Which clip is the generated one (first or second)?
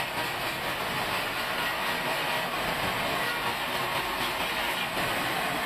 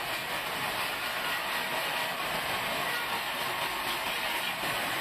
second